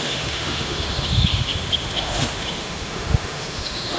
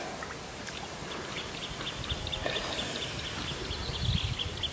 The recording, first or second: second